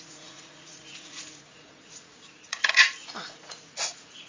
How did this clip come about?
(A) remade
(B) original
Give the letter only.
A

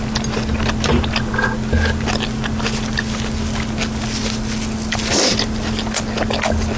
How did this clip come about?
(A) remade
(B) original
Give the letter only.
B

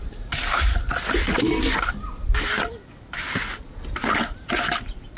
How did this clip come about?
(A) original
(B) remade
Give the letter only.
A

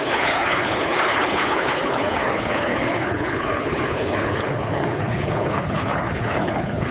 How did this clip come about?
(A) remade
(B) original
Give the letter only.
A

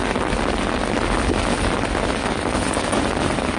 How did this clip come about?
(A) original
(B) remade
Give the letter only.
A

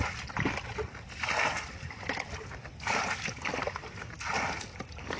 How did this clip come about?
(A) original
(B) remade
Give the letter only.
A